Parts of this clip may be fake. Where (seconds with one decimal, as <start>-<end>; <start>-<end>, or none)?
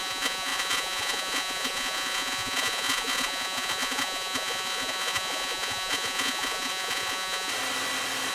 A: 0.0-7.5